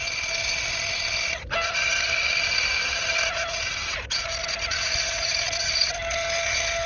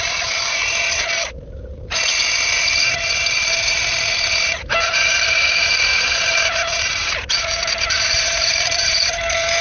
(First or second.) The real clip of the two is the first